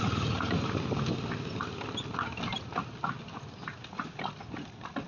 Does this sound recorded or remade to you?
recorded